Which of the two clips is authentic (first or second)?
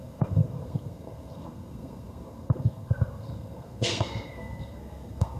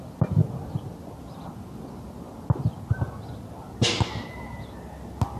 second